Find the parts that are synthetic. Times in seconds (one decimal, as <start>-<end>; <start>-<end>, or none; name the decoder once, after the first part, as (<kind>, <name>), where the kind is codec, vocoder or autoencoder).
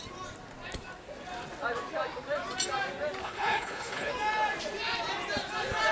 3.2-4.1 (codec, HILCodec)